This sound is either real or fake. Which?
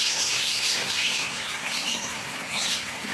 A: fake